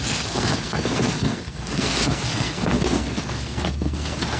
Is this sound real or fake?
fake